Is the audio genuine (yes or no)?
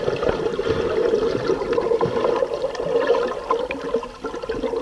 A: yes